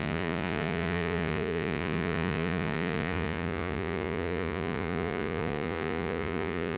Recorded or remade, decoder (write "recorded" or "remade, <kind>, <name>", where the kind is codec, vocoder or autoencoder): remade, vocoder, Vocos